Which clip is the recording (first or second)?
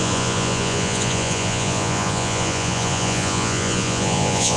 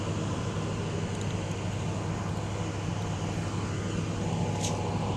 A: second